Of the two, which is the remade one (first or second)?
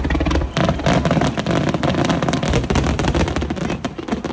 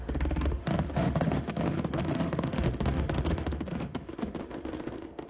second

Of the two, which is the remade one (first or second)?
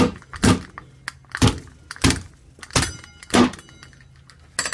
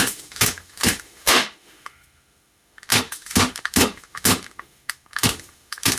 second